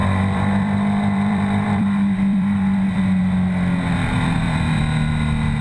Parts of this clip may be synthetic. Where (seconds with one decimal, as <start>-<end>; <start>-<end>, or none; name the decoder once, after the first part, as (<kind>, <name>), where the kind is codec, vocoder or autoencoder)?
0.0-3.2 (vocoder, BigVGAN v2); 4.0-4.8